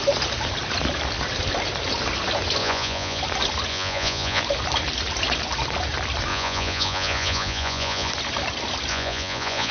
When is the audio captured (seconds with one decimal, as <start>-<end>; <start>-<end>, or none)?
0.0-2.6; 3.2-3.7; 4.4-6.3; 8.1-8.9